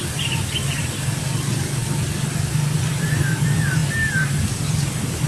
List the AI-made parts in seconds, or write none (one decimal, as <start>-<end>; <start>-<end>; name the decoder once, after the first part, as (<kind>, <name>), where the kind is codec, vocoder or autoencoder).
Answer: none